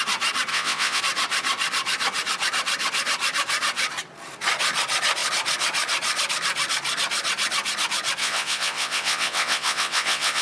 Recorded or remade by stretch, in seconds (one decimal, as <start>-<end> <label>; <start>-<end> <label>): 0.0-0.5 recorded; 0.5-1.0 remade; 1.0-8.2 recorded; 8.2-10.4 remade